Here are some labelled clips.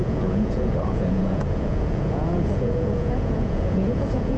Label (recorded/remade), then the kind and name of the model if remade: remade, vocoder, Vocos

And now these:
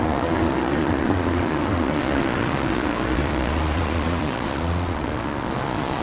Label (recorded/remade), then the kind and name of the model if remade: remade, vocoder, Vocos